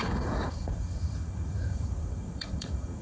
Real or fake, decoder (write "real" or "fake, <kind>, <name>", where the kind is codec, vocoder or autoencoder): fake, vocoder, Vocos